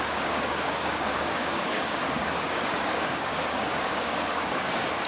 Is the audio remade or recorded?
remade